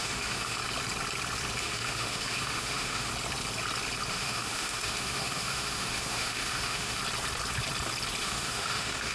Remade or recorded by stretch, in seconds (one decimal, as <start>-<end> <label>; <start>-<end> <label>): 0.0-0.6 remade; 0.6-1.6 recorded; 1.6-3.1 remade; 3.1-4.1 recorded; 4.1-7.0 remade; 7.0-8.2 recorded; 8.2-9.1 remade